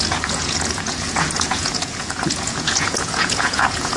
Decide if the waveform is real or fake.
fake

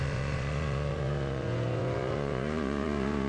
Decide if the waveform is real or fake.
fake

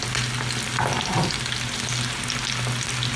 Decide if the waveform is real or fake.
real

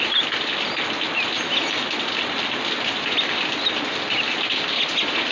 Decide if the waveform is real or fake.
real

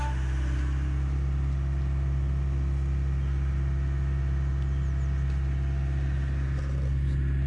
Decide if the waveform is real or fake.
real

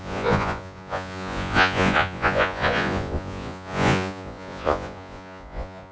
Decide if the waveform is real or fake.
fake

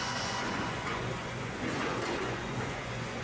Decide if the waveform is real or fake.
fake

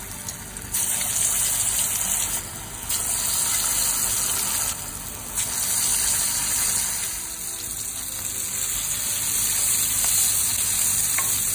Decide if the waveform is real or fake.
real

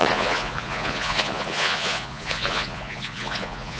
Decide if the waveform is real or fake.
fake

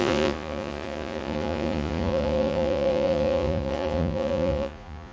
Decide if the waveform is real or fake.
fake